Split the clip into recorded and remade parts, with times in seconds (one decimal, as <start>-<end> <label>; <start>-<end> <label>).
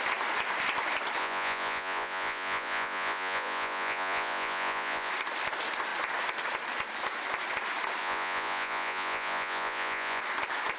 0.0-1.2 recorded; 1.2-5.1 remade; 5.1-8.0 recorded; 8.0-10.2 remade; 10.2-10.8 recorded